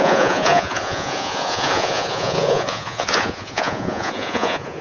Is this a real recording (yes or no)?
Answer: no